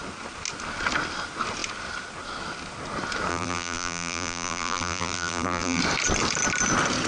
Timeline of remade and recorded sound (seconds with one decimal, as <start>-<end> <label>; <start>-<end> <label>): 0.0-3.3 recorded; 3.3-5.8 remade; 5.8-7.1 recorded

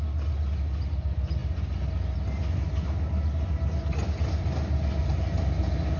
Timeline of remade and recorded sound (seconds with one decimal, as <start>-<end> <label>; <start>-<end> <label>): 0.0-6.0 recorded

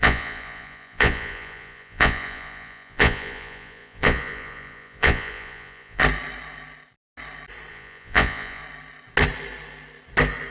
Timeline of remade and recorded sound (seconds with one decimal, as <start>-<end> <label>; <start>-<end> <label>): 0.0-6.0 remade; 6.0-7.7 recorded; 7.7-8.6 remade; 8.6-10.5 recorded

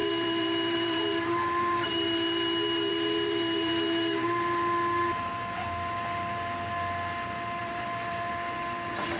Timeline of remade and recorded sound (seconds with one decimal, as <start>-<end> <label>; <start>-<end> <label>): 0.0-5.3 remade; 5.3-7.6 recorded; 7.6-8.3 remade; 8.3-9.2 recorded

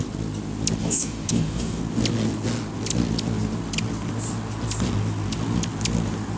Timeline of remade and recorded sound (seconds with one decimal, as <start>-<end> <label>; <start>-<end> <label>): 0.0-0.8 recorded; 0.8-1.8 remade; 1.8-6.4 recorded